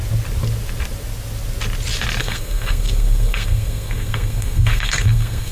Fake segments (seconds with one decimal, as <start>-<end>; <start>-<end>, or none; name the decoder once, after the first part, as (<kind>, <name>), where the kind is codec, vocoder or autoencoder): 2.2-5.5 (codec, SNAC)